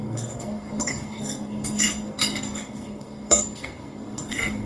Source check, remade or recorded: remade